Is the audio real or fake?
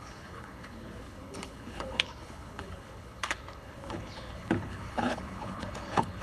fake